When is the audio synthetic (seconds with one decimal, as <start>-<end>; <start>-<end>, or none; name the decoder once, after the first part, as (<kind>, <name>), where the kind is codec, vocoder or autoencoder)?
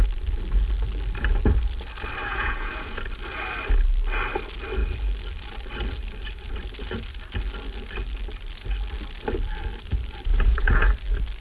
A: 2.2-3.0 (vocoder, Vocos); 10.3-10.9